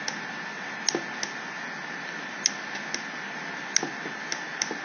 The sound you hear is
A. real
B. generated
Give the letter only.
A